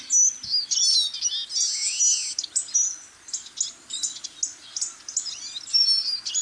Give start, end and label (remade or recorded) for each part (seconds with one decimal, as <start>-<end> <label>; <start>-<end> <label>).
0.0-6.4 recorded